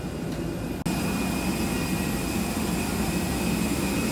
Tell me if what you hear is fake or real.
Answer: real